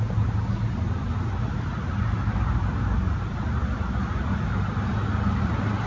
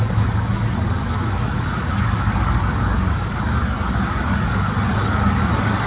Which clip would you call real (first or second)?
first